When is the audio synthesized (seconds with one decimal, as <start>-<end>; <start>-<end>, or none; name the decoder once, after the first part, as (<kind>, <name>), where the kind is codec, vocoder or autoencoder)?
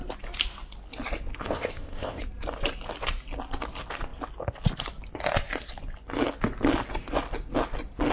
1.4-2.2 (codec, ZipCodec)